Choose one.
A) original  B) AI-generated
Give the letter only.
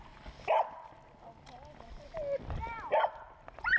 A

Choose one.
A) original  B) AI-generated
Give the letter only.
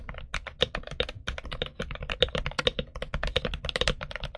A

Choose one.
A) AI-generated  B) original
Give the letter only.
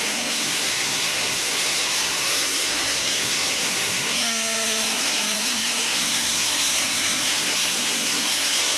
A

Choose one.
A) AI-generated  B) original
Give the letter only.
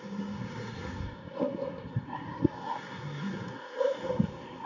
A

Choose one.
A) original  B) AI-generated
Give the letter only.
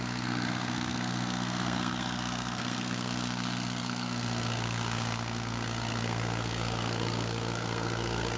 B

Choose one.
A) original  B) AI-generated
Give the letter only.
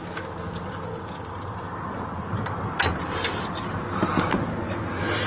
A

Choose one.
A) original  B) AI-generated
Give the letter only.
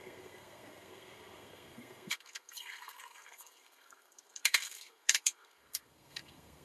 B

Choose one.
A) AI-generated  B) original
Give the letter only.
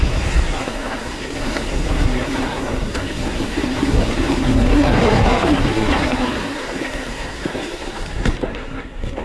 A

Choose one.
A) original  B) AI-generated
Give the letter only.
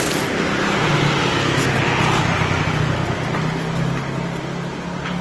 A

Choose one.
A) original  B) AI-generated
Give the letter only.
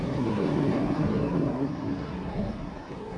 B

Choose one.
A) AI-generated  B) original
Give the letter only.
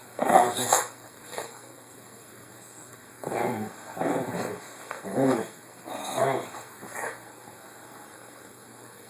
A